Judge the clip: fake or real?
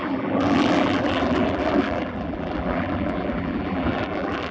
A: fake